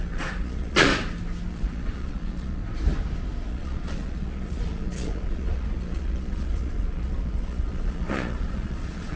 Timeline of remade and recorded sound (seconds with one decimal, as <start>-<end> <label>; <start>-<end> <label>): 0.0-0.9 remade; 0.9-1.5 recorded; 1.5-2.6 remade; 2.6-3.5 recorded; 3.5-9.2 remade